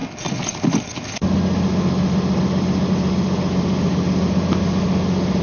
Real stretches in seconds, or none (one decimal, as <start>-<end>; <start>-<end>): 0.0-5.4